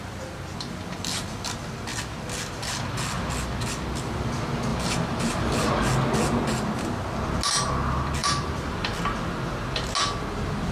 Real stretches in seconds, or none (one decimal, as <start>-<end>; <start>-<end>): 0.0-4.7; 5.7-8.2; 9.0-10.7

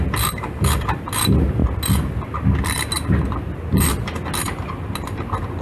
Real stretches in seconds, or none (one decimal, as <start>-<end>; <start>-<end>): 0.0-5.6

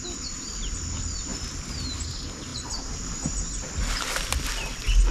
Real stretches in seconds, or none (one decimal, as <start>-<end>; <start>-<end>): 0.0-1.3; 2.0-5.1

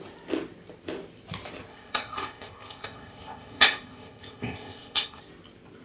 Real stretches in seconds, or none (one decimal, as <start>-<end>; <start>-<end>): 0.0-1.7; 5.2-5.8

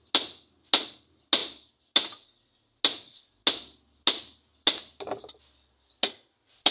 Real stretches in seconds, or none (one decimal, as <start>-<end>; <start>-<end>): 0.0-6.7

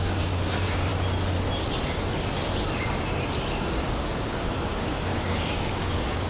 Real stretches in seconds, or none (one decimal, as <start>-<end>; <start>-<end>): 0.9-3.5

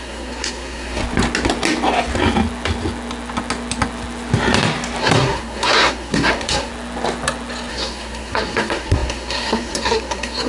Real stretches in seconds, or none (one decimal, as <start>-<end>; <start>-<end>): 1.0-5.0; 6.7-7.7

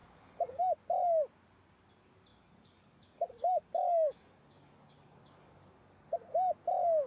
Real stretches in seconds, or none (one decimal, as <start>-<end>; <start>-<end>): 0.6-2.3; 6.1-7.1